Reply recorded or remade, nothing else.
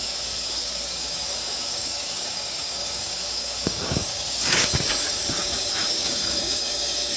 remade